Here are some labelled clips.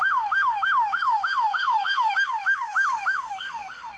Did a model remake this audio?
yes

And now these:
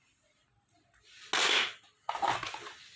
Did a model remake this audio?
no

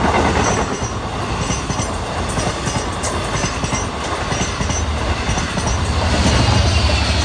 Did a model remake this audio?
no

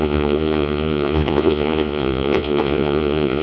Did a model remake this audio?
yes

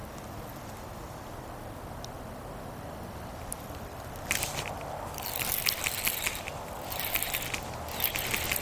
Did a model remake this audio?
no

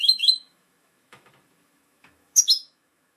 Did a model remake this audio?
yes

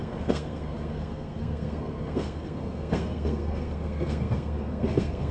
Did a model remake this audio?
yes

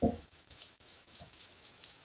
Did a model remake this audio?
yes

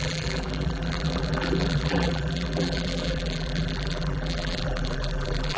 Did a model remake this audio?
yes